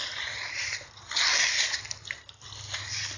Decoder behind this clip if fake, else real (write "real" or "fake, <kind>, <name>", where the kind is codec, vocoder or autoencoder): real